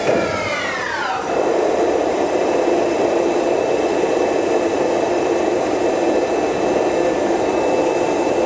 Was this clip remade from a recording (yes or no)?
yes